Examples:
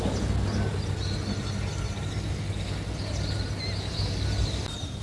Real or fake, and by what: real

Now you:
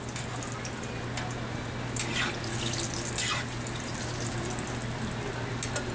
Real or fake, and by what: real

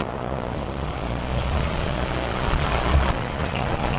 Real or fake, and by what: fake, vocoder, Vocos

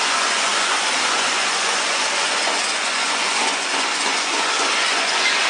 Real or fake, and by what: fake, vocoder, Vocos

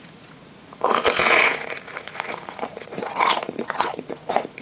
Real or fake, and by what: fake, vocoder, Vocos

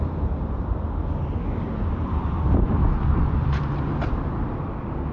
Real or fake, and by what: fake, vocoder, BigVGAN v2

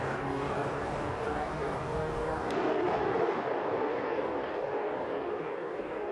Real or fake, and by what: fake, codec, DAC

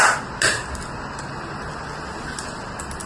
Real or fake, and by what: real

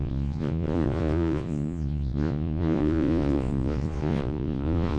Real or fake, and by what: fake, vocoder, Vocos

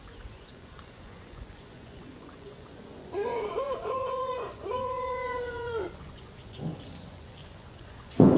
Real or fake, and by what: fake, vocoder, Vocos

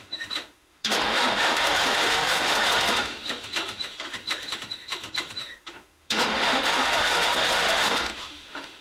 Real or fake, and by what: fake, autoencoder, DAC-VAE